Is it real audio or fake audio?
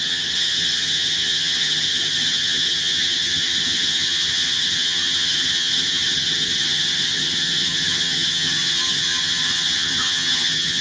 fake